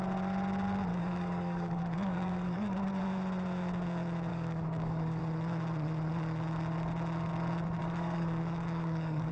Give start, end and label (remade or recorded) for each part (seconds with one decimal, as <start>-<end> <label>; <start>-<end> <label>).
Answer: 0.0-0.9 recorded; 0.9-3.0 remade; 3.0-4.3 recorded; 4.3-5.2 remade; 5.2-7.8 recorded; 7.8-9.3 remade

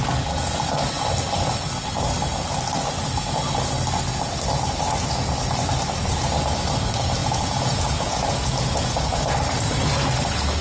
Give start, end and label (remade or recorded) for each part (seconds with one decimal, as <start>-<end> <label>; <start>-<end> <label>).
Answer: 0.0-7.2 recorded; 7.2-9.3 remade; 9.3-10.6 recorded

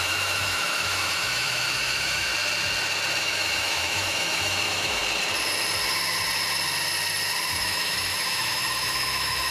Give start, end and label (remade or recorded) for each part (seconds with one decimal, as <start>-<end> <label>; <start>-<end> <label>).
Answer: 0.0-2.3 remade; 2.3-3.2 recorded; 3.2-5.0 remade; 5.0-7.6 recorded; 7.6-9.5 remade